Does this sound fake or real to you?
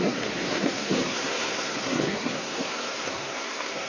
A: fake